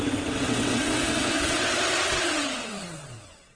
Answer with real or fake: fake